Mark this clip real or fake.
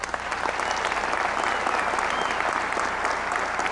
real